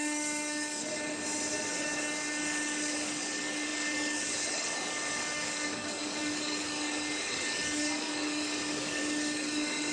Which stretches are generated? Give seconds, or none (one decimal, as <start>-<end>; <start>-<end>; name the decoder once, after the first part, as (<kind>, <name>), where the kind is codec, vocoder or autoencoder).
0.0-0.9 (codec, DAC); 1.7-9.9

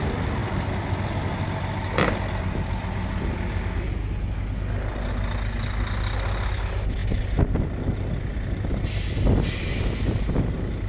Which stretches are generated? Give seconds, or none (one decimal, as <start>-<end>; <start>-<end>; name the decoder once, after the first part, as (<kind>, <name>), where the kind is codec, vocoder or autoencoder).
none

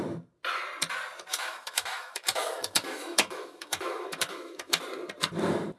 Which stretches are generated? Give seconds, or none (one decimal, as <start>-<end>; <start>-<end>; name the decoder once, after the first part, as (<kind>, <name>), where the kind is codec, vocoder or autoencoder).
1.3-4.8 (autoencoder, DAC-VAE)

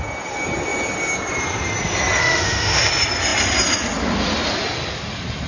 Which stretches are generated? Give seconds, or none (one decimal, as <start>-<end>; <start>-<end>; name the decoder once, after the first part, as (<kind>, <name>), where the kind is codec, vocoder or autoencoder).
2.2-2.9 (autoencoder, DAC-VAE)

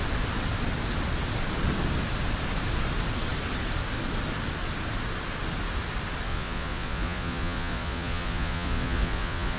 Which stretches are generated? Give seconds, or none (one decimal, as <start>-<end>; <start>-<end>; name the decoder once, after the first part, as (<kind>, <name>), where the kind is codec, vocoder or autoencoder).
6.3-9.6 (vocoder, Vocos)

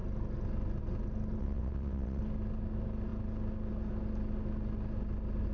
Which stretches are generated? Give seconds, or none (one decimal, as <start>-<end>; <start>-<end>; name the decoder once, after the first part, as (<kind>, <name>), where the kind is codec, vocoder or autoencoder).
1.4-2.2 (vocoder, WaveNeXt)

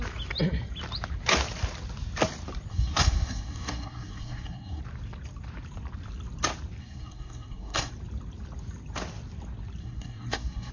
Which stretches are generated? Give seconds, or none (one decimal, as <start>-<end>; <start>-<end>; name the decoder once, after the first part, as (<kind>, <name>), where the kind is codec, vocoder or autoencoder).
2.7-4.8 (codec, SNAC); 6.8-7.9; 9.8-10.7

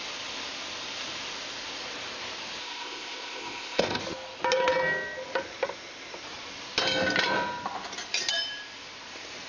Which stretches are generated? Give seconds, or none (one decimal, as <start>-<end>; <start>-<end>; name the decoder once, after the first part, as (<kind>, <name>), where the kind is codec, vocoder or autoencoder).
2.6-4.0 (codec, ZipCodec)